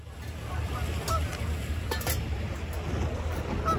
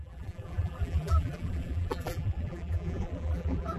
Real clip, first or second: first